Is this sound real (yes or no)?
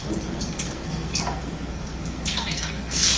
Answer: no